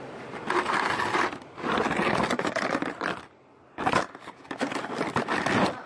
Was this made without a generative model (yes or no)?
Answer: yes